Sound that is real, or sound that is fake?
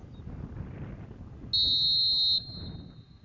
real